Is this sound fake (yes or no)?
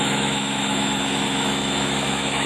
yes